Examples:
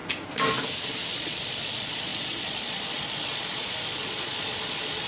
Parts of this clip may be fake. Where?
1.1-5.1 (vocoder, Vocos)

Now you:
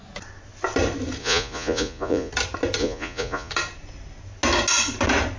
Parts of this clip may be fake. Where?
1.2-2.3 (vocoder, Vocos); 2.8-3.5

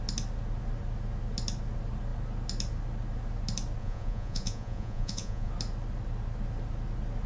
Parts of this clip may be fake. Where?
3.8-5.5 (vocoder, Vocos)

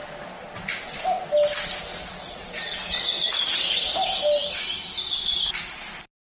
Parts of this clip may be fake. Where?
1.9-2.5 (vocoder, Vocos)

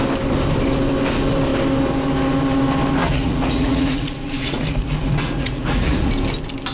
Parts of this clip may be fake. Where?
3.0-6.1 (vocoder, Vocos)

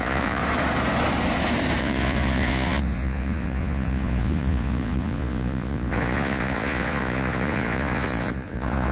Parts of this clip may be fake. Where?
0.0-0.4 (vocoder, Vocos); 1.8-8.9

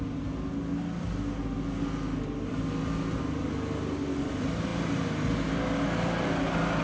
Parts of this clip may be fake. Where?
none

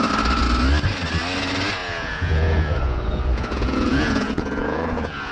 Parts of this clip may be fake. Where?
1.8-5.3 (vocoder, Vocos)